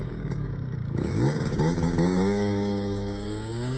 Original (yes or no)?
no